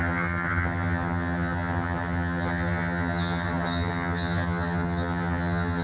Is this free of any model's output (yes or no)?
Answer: no